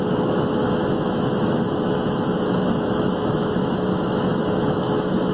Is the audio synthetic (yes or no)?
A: yes